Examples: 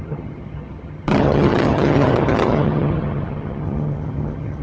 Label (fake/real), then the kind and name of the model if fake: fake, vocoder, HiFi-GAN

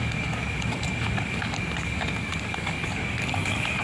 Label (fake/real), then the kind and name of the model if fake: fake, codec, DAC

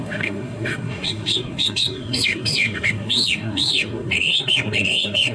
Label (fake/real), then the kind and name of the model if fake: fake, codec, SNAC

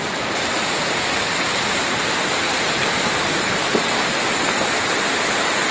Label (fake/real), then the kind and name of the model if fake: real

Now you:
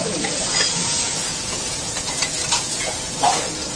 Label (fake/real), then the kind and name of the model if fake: fake, vocoder, Vocos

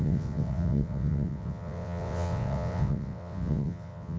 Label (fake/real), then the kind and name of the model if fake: fake, vocoder, WaveNeXt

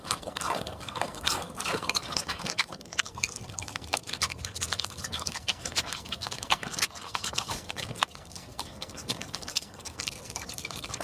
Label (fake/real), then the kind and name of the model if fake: fake, codec, SNAC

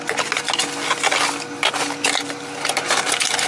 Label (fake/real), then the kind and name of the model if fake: real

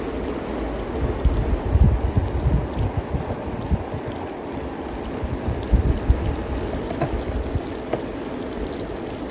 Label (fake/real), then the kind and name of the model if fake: real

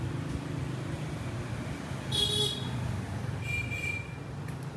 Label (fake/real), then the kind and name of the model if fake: real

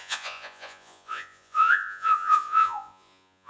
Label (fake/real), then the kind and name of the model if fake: fake, vocoder, Vocos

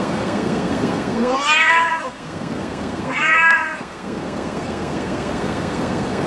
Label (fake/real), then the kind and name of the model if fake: fake, codec, SNAC